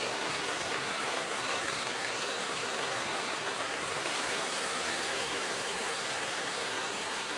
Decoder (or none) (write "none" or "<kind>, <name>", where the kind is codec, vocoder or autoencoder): codec, SNAC